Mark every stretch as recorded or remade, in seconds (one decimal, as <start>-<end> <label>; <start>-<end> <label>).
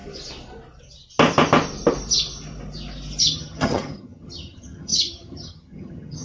0.0-3.2 recorded; 3.2-6.2 remade